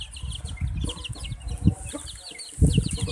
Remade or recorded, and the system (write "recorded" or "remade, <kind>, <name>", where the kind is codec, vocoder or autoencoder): recorded